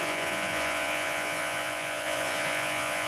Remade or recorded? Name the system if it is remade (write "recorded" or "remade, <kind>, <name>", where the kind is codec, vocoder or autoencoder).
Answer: remade, vocoder, Vocos